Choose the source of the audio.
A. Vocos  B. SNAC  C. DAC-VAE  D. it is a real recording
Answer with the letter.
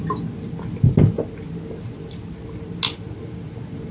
D